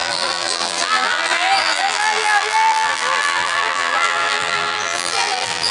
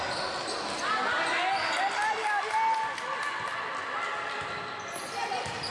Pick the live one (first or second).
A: second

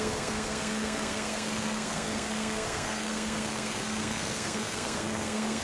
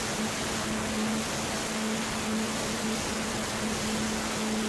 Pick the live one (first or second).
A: second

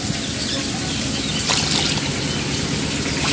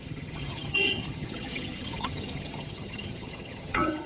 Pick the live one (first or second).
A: first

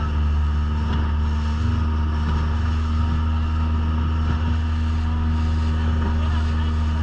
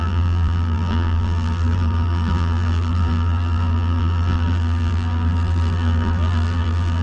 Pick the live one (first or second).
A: first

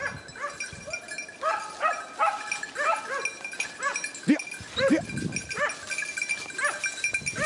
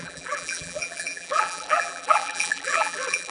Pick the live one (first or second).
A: first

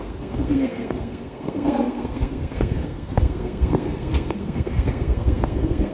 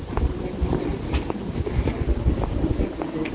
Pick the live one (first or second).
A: second